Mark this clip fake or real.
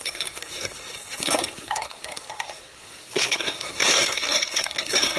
fake